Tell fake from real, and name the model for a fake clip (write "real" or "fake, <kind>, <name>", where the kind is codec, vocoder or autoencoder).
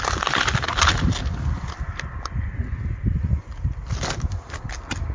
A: real